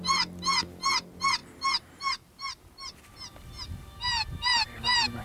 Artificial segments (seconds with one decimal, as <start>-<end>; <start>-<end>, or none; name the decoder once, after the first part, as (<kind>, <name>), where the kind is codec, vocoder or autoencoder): 1.4-3.0 (vocoder, BigVGAN v2)